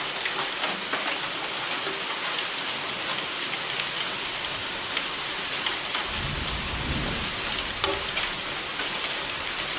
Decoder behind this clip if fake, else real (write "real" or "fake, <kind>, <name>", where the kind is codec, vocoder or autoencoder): real